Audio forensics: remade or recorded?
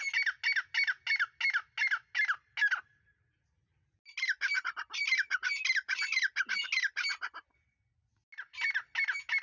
recorded